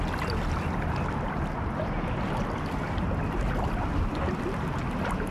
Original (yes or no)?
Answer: yes